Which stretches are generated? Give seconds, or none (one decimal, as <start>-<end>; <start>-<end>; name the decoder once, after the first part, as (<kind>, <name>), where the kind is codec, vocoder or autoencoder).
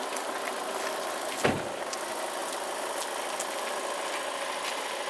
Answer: none